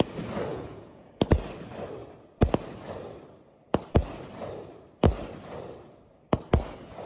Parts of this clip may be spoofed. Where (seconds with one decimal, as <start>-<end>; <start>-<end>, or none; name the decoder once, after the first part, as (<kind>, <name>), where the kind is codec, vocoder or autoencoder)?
0.5-1.1 (vocoder, Vocos)